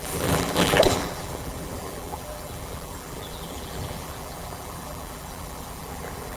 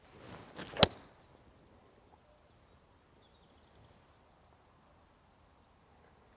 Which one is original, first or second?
second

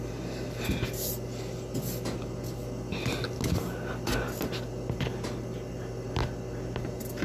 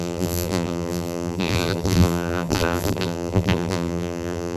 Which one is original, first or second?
first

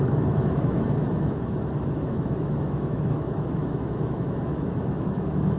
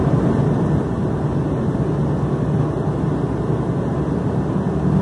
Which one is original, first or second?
second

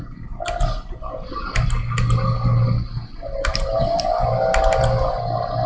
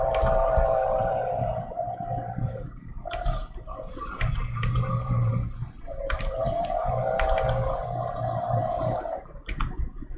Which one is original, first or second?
first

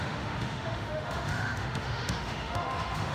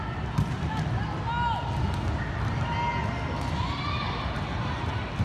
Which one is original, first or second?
second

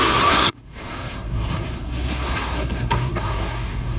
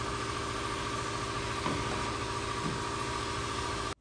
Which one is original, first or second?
second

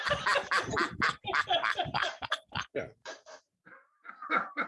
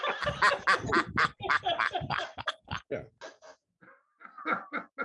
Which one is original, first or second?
second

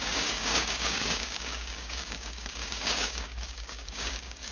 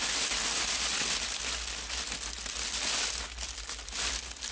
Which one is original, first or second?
second